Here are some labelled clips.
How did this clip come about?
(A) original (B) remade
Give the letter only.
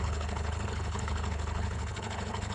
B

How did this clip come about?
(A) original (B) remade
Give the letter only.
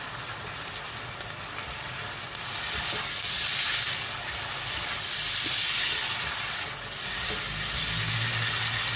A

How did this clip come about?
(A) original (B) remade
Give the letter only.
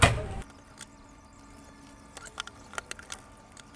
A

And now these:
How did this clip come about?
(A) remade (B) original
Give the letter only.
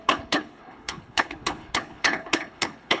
A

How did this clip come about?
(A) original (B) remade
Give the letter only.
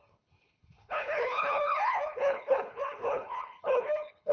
B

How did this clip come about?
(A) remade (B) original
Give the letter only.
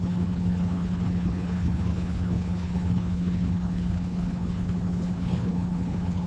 A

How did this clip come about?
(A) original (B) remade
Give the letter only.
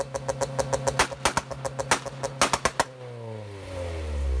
A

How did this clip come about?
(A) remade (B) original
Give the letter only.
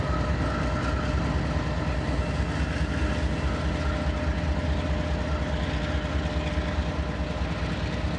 B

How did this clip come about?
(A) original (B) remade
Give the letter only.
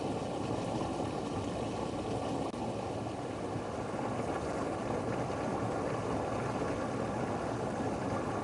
A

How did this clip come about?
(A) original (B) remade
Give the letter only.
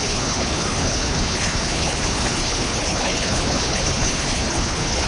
B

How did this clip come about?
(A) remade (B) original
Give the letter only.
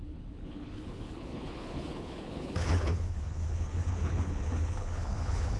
A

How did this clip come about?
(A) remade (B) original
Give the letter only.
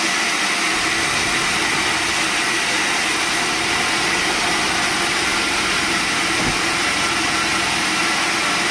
B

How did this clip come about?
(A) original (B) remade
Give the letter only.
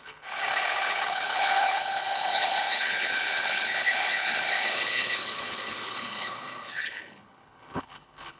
B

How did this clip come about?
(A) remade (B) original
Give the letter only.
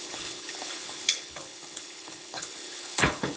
A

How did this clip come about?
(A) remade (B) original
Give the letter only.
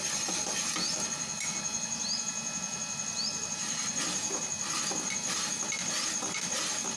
B